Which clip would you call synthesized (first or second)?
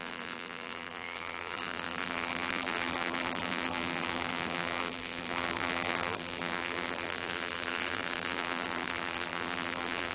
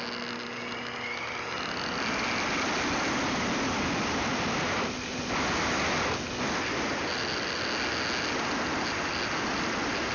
first